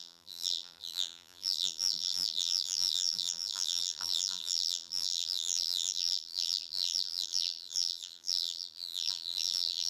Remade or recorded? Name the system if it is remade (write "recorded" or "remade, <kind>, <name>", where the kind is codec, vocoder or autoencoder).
remade, vocoder, BigVGAN v2